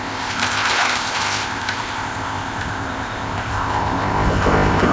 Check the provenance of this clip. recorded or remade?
remade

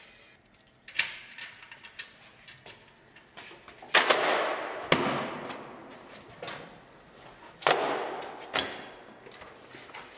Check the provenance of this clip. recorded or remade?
recorded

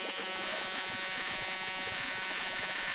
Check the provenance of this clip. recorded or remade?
remade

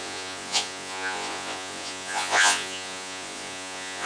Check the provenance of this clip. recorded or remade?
remade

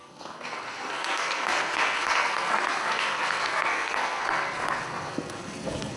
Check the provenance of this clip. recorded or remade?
remade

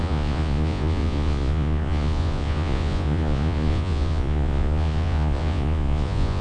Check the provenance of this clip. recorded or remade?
remade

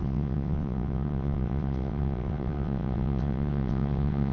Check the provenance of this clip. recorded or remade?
remade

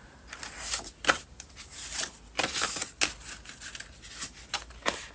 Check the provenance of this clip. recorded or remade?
recorded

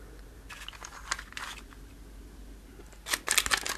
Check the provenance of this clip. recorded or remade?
recorded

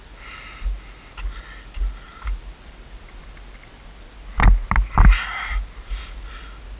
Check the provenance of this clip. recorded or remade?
recorded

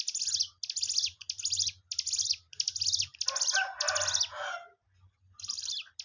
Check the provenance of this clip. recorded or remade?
recorded